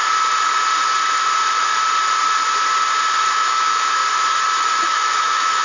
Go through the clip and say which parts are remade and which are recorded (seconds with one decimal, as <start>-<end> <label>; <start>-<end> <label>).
0.0-3.3 recorded; 3.3-4.0 remade; 4.0-4.8 recorded; 4.8-5.6 remade

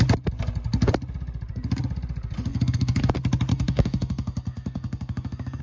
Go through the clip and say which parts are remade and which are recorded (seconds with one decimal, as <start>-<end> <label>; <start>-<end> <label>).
0.0-2.5 recorded; 2.5-3.1 remade; 3.1-3.5 recorded; 3.5-5.6 remade

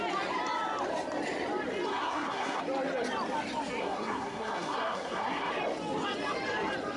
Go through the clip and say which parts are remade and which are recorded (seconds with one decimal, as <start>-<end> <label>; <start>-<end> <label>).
0.0-1.9 recorded; 1.9-2.6 remade; 2.6-3.8 recorded; 3.8-5.5 remade; 5.5-7.0 recorded